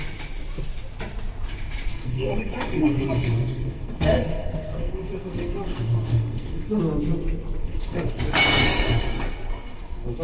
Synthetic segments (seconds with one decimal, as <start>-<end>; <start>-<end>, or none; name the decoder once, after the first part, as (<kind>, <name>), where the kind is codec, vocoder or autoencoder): 1.9-6.8 (codec, SNAC); 7.6-8.2; 8.6-10.2